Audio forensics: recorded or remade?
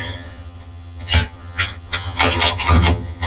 remade